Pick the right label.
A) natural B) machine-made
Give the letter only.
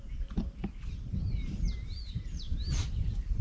B